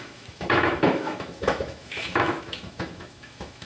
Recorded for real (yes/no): no